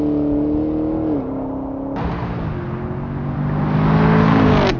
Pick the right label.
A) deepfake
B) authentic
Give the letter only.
B